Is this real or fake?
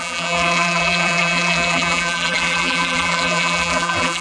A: fake